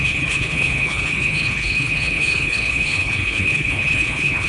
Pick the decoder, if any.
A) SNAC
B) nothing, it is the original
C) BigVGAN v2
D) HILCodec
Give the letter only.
D